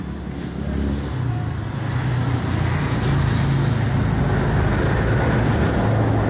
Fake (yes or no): no